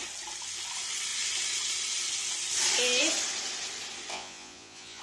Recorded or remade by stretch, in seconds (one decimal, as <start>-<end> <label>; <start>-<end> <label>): 0.0-4.1 recorded; 4.1-5.0 remade

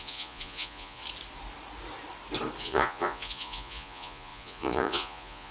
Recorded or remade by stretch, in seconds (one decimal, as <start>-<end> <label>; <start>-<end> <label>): 0.0-1.0 remade; 1.0-2.6 recorded; 2.6-5.5 remade

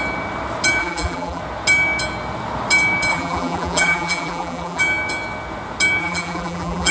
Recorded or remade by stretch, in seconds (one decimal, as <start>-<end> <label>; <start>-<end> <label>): 0.0-0.8 recorded; 0.8-1.4 remade; 1.4-3.1 recorded; 3.1-4.8 remade; 4.8-6.0 recorded; 6.0-6.9 remade